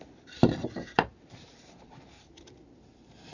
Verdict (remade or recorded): remade